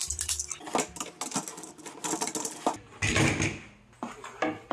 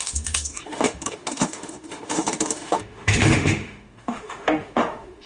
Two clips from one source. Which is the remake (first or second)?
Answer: second